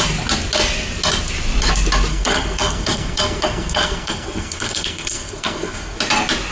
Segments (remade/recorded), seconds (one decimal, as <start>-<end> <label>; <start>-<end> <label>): 0.0-2.1 recorded; 2.1-6.0 remade; 6.0-6.5 recorded